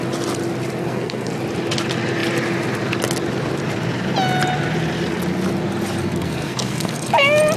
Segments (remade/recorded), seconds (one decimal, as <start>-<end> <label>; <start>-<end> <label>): 0.0-0.8 recorded; 0.8-1.3 remade; 1.3-6.0 recorded; 6.0-7.1 remade; 7.1-7.6 recorded